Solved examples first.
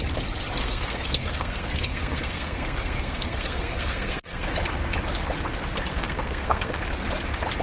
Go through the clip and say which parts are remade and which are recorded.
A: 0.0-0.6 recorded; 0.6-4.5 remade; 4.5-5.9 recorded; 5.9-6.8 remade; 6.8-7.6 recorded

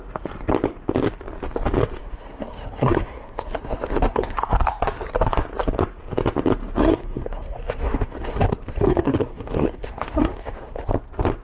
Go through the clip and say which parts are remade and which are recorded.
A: 0.0-2.0 recorded; 2.0-4.7 remade; 4.7-6.8 recorded; 6.8-10.9 remade; 10.9-11.4 recorded

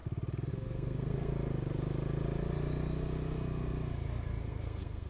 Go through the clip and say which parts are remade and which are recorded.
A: 0.0-0.5 recorded; 0.5-1.3 remade; 1.3-4.4 recorded; 4.4-5.1 remade

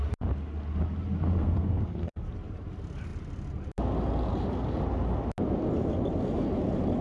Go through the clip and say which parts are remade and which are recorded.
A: 0.0-1.4 recorded; 1.4-2.3 remade; 2.3-7.0 recorded

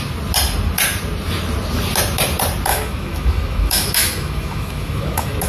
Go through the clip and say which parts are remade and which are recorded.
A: 0.0-2.7 recorded; 2.7-5.5 remade